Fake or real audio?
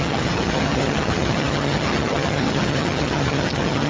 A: fake